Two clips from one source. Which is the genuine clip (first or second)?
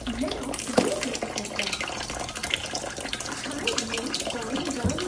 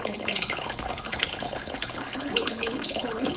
first